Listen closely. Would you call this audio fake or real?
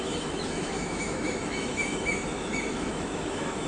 fake